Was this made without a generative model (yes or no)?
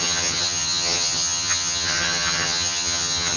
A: no